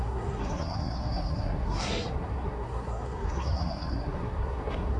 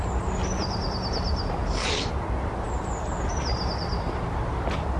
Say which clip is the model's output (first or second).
first